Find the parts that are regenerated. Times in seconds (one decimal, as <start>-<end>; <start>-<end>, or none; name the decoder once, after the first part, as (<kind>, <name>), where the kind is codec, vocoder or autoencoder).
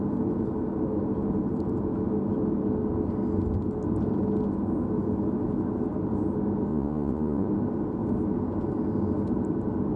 6.7-7.5 (vocoder, Vocos)